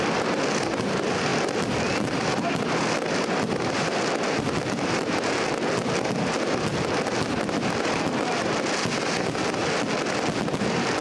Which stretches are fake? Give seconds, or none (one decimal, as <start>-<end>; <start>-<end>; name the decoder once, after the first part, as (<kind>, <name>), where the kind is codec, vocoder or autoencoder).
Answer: none